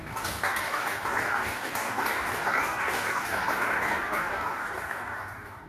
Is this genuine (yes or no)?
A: no